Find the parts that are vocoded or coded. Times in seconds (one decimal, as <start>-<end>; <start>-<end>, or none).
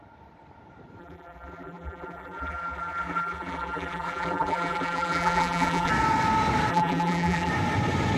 1.0-5.9; 6.7-7.5